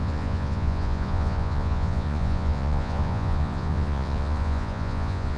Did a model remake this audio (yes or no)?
yes